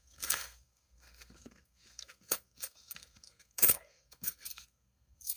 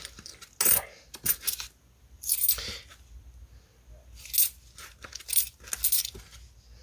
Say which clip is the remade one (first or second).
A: first